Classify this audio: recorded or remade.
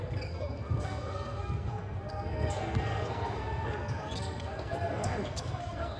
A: remade